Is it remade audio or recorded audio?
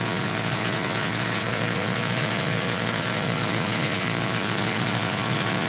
remade